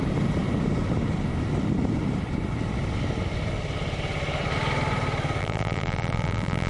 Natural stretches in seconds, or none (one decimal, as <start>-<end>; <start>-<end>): 0.0-5.4